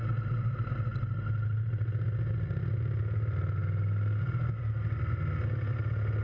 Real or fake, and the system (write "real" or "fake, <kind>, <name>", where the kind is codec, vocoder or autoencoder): real